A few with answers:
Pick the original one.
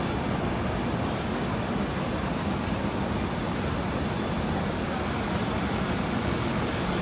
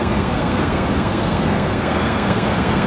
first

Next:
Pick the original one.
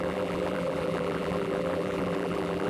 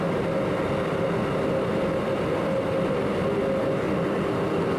second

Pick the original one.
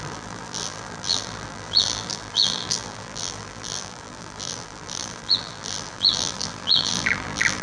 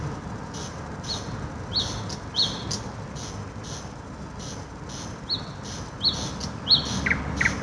second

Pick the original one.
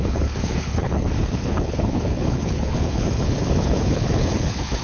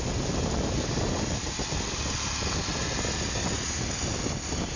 second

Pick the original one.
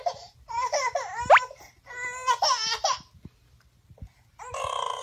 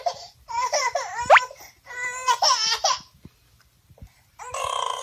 first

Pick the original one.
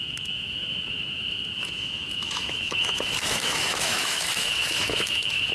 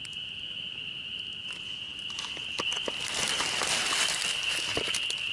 second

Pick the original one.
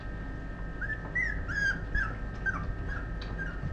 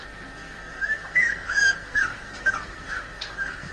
first